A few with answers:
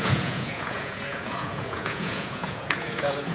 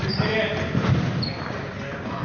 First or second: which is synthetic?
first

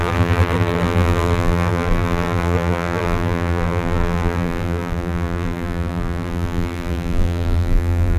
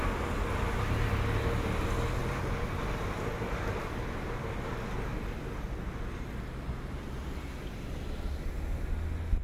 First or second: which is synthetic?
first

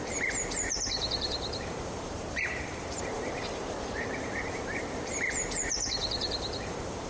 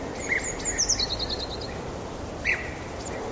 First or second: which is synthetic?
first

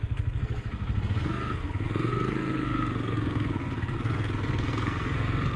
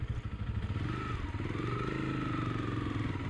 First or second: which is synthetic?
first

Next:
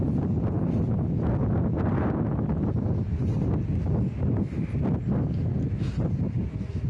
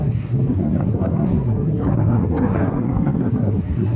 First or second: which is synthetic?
second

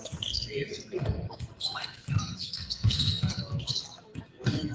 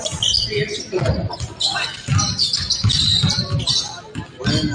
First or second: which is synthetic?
first